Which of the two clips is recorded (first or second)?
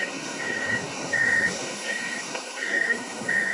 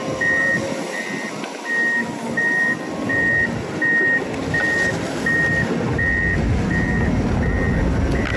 second